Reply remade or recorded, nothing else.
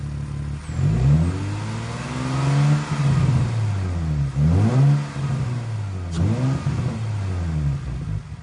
recorded